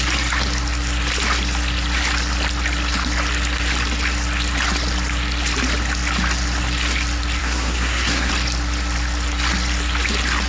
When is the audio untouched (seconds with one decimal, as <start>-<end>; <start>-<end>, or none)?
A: 0.0-7.4; 8.3-10.5